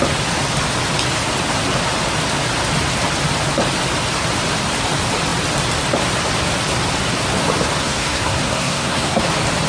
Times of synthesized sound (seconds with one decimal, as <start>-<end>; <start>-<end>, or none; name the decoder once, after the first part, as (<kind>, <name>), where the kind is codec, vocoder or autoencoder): 7.8-9.2 (codec, SNAC)